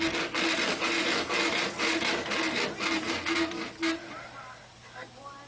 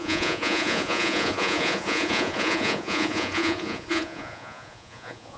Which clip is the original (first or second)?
first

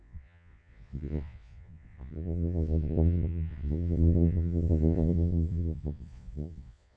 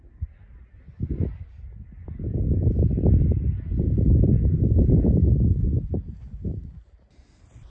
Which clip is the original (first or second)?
second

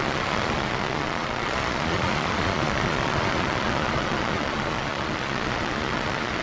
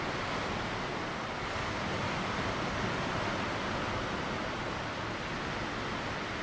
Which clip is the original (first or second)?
second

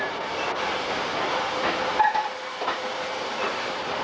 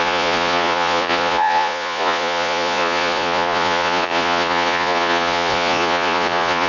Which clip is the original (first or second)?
first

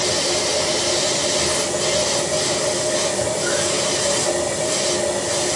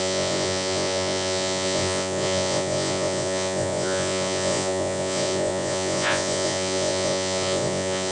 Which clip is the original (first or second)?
first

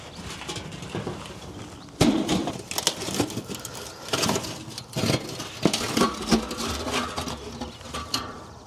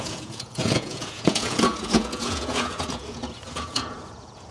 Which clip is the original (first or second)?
first